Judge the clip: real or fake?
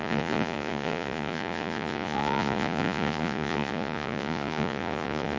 fake